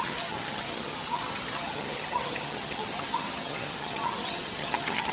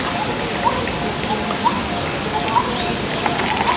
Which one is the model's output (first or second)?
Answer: first